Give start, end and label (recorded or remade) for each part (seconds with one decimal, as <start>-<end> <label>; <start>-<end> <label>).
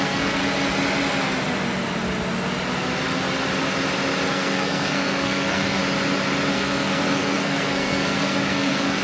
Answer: 0.0-0.4 remade; 0.4-4.3 recorded; 4.3-5.8 remade; 5.8-6.5 recorded; 6.5-9.0 remade